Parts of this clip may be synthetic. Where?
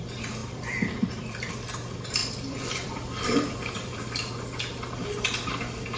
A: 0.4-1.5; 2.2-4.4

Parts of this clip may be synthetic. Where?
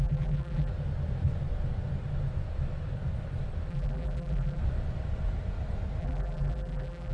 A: 0.0-0.7; 3.7-4.6; 6.0-7.1